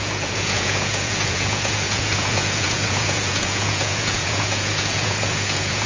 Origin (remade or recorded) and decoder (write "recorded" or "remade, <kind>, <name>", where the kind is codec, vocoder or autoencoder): remade, vocoder, Vocos